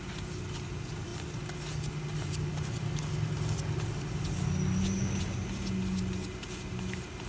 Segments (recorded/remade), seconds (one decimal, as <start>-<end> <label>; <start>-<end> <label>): 0.0-7.3 recorded